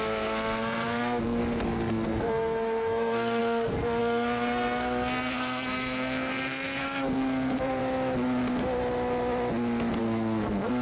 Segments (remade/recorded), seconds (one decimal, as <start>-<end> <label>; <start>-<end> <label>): 0.0-1.4 remade; 1.4-1.9 recorded; 1.9-7.8 remade; 7.8-10.0 recorded; 10.0-10.8 remade